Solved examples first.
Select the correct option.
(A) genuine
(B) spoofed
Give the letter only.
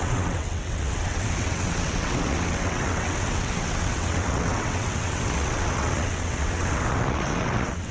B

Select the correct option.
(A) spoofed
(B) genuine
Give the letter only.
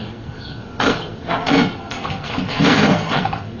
A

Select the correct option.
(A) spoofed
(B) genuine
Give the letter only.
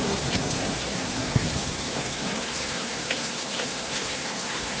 A